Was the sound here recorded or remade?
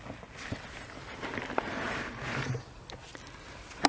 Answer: recorded